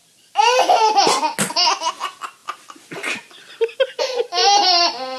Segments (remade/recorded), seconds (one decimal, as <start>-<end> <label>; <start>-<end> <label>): 0.0-5.2 recorded